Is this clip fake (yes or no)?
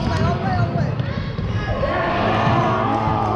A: no